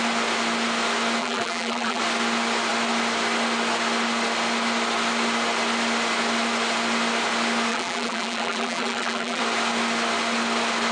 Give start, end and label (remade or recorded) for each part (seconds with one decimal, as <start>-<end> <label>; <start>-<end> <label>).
0.0-1.2 recorded; 1.2-2.0 remade; 2.0-7.7 recorded; 7.7-9.4 remade; 9.4-10.9 recorded